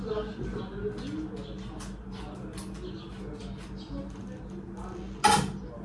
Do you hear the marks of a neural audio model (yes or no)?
no